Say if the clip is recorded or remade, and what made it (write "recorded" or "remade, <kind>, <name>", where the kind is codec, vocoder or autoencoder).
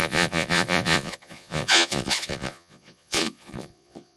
remade, vocoder, Vocos